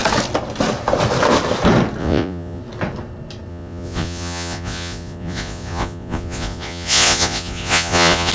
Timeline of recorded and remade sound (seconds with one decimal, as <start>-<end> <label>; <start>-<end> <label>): 0.0-2.0 recorded; 2.0-2.6 remade; 2.6-3.5 recorded; 3.5-8.3 remade